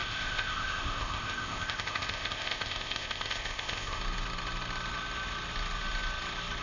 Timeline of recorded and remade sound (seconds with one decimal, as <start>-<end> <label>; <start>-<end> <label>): 0.0-4.0 remade; 4.0-6.6 recorded